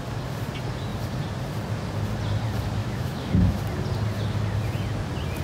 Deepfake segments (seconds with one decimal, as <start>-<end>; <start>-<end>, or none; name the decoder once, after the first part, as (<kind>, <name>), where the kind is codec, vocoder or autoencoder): 2.8-3.6 (autoencoder, DAC-VAE)